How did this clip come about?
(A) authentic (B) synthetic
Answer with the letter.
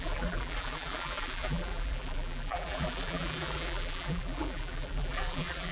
B